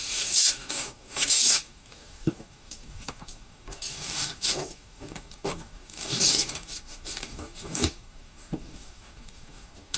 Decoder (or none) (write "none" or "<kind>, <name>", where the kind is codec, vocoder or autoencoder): codec, DAC